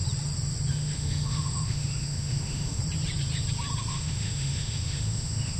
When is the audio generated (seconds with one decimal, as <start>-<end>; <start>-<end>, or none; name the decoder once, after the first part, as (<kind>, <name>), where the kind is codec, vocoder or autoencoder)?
0.7-2.8 (autoencoder, DAC-VAE); 3.9-5.6

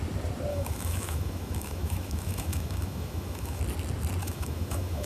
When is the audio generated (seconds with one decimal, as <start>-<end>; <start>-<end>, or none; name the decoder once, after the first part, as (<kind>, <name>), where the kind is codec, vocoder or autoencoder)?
0.5-3.6 (autoencoder, DAC-VAE); 4.2-5.1

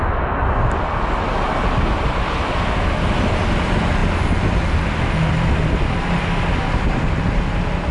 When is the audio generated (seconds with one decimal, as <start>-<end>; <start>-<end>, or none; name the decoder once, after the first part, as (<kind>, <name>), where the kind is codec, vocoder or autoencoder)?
none